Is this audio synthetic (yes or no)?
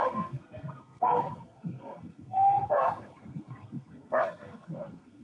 yes